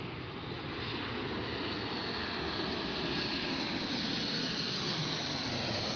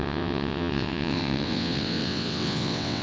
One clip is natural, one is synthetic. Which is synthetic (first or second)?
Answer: second